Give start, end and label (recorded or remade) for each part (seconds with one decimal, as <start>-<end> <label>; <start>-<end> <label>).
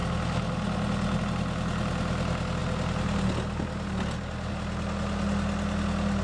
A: 0.0-6.2 recorded